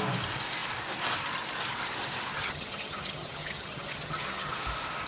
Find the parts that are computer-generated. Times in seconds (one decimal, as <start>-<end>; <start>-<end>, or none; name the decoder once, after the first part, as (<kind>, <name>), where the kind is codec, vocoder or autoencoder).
2.3-4.5 (vocoder, HiFi-GAN)